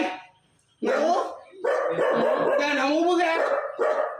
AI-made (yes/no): no